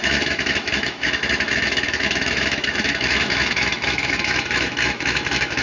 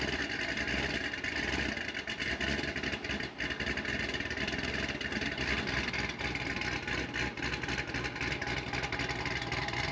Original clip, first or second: second